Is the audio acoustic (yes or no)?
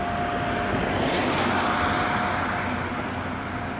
yes